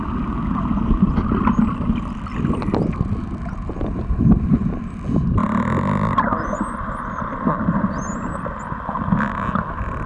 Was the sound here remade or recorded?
recorded